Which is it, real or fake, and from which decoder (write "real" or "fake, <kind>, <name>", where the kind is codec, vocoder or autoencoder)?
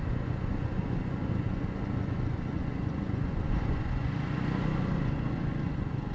fake, vocoder, Vocos